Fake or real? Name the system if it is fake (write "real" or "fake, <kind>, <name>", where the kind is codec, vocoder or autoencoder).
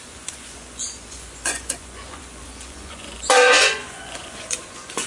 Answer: fake, vocoder, Vocos